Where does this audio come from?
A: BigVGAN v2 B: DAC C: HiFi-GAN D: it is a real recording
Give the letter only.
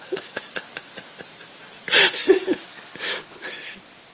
D